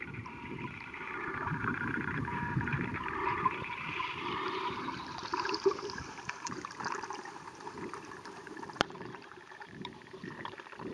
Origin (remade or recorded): remade